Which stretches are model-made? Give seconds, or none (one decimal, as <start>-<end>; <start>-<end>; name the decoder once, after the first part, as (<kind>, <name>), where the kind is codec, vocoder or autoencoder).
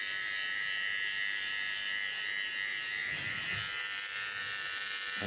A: 0.0-5.3 (vocoder, BigVGAN v2)